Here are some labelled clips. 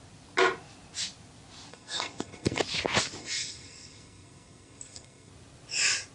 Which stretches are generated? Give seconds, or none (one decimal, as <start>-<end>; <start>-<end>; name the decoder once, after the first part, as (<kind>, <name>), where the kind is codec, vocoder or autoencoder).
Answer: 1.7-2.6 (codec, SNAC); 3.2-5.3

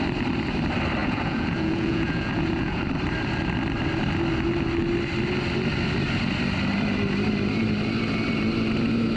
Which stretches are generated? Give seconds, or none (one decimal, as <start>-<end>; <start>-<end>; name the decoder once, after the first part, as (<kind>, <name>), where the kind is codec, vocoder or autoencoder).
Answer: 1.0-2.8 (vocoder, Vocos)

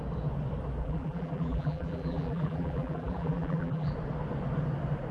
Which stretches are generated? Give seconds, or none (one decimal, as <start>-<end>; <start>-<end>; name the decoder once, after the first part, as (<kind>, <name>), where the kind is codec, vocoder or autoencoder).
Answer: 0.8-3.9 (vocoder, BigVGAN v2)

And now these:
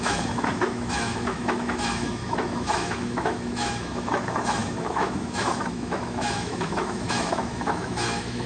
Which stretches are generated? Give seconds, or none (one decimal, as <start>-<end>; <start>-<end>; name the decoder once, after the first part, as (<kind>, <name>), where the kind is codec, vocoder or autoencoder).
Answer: 0.0-8.5 (autoencoder, DAC-VAE)

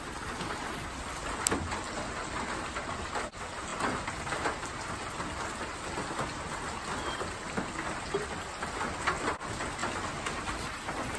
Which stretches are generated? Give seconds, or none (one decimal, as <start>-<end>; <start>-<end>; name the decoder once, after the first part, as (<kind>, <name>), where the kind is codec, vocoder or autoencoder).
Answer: none

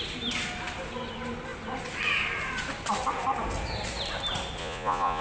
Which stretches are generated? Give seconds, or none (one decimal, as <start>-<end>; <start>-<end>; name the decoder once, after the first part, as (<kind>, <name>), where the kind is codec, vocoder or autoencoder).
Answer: 4.6-5.2 (vocoder, Vocos)

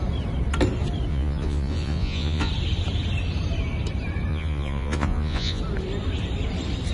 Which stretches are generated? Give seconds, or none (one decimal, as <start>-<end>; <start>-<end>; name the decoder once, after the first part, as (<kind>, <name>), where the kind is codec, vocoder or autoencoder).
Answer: 1.1-2.5 (vocoder, Vocos); 4.3-5.6